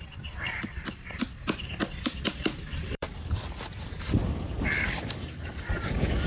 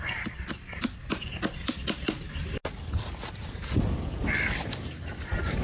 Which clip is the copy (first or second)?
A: first